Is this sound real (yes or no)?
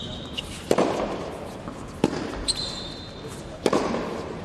yes